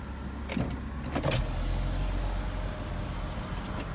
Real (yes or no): yes